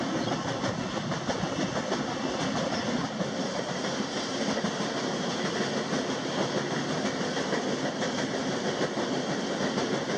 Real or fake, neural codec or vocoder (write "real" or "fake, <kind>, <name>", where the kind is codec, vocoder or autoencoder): real